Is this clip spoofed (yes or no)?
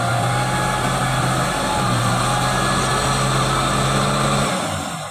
no